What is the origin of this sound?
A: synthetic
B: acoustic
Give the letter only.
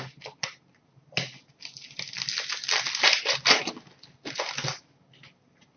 B